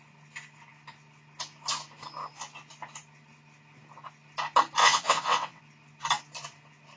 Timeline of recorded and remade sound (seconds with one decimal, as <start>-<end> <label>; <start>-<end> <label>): 0.0-4.8 recorded; 4.8-5.6 remade; 5.6-7.0 recorded